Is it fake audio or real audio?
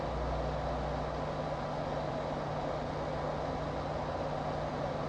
real